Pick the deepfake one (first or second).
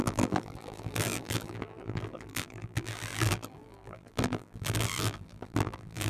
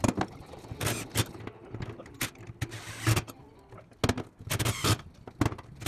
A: first